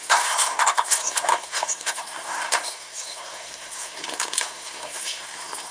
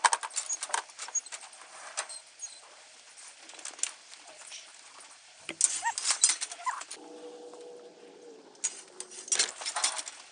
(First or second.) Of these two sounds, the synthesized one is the first